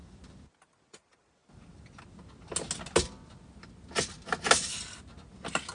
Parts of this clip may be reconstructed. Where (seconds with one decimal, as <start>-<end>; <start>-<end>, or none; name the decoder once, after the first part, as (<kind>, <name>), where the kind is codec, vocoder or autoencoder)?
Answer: none

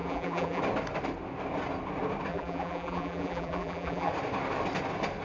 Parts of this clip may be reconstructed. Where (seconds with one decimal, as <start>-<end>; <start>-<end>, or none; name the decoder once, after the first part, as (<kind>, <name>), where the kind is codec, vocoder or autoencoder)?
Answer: 0.0-0.6 (vocoder, BigVGAN v2); 2.3-4.1

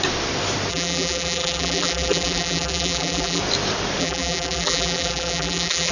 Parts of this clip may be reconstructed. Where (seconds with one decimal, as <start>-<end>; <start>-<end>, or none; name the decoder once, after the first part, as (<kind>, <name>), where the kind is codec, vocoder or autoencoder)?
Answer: 0.7-3.4 (vocoder, BigVGAN v2); 4.0-5.9

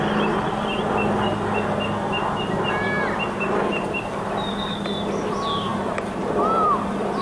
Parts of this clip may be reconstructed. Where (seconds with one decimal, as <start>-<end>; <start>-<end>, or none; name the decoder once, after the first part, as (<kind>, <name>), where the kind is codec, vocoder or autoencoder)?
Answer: none

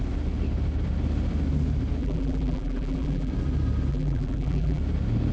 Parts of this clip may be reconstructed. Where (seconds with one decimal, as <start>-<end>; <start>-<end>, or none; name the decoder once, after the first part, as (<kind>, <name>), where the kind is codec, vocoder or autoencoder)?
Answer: 2.0-3.3 (vocoder, BigVGAN v2); 3.9-4.8

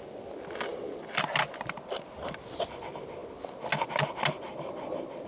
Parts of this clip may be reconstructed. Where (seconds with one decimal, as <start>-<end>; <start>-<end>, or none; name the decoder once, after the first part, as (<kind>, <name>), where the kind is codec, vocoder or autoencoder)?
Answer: none

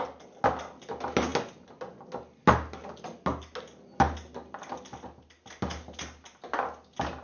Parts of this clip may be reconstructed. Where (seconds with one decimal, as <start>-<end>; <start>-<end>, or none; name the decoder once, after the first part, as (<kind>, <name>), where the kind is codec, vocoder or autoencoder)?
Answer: none